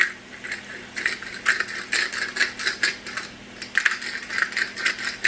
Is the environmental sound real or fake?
real